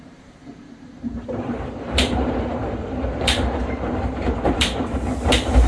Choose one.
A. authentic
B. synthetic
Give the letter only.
B